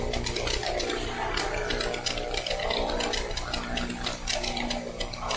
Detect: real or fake real